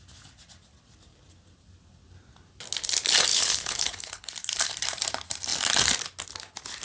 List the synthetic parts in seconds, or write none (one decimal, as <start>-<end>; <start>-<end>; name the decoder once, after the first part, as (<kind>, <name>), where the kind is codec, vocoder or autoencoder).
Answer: 3.3-4.3 (codec, HILCodec)